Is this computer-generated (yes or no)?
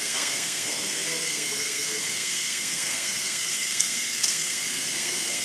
yes